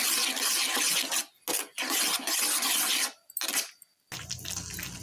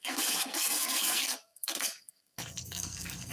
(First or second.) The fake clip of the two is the second